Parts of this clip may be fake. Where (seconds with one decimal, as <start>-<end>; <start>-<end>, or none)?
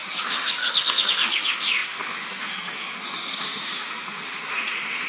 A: 0.0-5.1